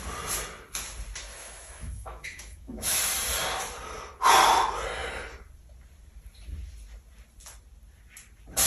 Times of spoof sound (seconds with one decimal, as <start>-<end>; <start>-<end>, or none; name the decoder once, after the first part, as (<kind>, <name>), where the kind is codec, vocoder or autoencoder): 1.3-3.0 (autoencoder, DAC-VAE)